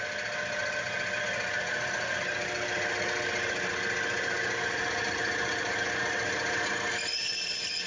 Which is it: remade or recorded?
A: recorded